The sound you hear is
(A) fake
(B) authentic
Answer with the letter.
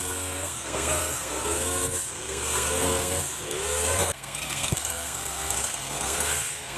A